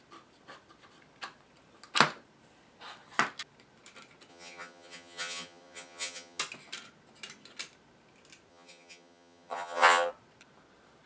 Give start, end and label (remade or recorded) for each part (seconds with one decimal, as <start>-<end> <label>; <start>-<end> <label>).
0.0-4.3 recorded; 4.3-6.4 remade; 6.4-8.5 recorded; 8.5-10.1 remade; 10.1-11.1 recorded